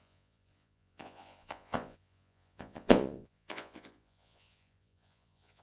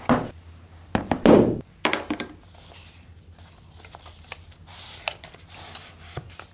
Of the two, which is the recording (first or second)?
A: second